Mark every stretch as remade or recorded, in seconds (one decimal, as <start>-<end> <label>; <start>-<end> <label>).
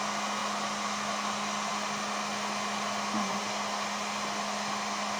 0.0-5.2 recorded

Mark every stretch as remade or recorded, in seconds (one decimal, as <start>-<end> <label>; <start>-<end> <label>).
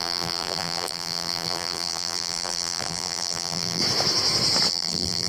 0.0-3.8 remade; 3.8-4.7 recorded; 4.7-5.3 remade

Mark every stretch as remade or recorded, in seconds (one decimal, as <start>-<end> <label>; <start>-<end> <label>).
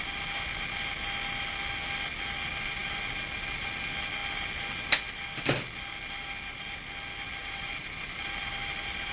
0.0-7.4 recorded; 7.4-8.3 remade; 8.3-9.1 recorded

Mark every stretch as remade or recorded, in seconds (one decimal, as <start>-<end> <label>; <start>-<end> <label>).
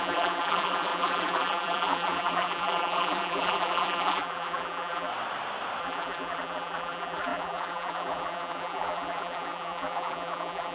0.0-5.1 remade; 5.1-5.8 recorded; 5.8-10.7 remade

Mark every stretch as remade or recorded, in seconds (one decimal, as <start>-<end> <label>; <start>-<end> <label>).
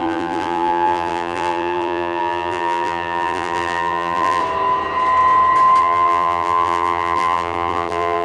0.0-4.4 remade; 4.4-5.8 recorded; 5.8-8.2 remade